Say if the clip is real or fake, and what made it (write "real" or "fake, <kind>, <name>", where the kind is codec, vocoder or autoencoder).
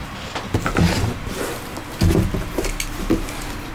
real